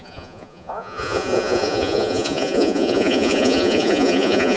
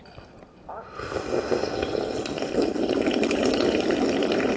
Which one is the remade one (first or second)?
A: first